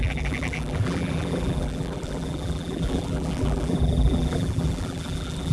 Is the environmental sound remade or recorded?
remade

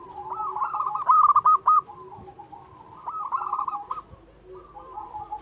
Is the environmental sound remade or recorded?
remade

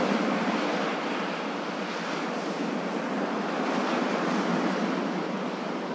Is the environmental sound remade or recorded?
remade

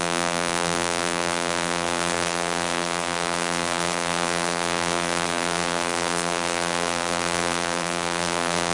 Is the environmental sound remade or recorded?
remade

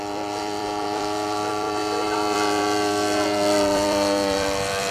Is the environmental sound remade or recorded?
remade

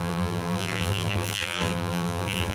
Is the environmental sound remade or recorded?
remade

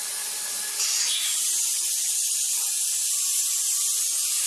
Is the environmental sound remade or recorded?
recorded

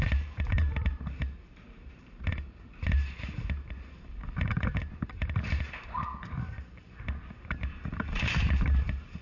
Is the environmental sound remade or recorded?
remade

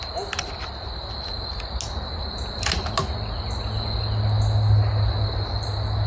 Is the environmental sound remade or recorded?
recorded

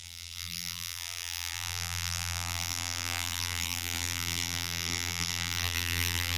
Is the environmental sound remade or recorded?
remade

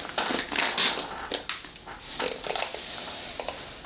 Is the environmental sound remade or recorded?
recorded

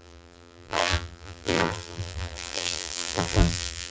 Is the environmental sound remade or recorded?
remade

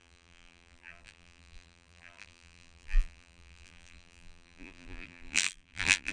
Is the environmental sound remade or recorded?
remade